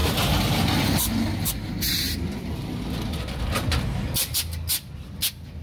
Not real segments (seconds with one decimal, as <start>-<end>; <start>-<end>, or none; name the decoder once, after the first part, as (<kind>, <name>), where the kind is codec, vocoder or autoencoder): none